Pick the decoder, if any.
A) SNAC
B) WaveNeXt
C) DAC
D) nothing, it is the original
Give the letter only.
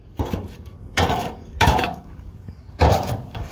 C